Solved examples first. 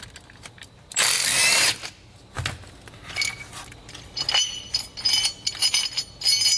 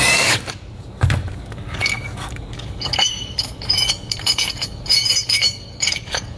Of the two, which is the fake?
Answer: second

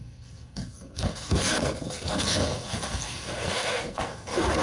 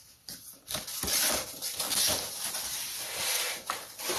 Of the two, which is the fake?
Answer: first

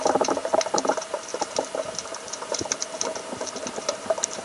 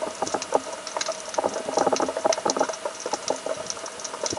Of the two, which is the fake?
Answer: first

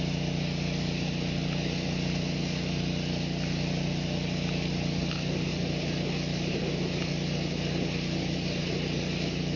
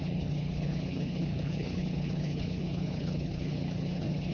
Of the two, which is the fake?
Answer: second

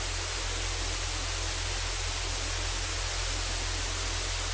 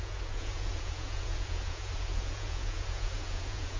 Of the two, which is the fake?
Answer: second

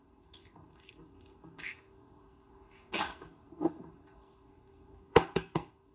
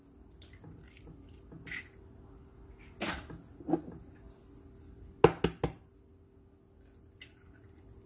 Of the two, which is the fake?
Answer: first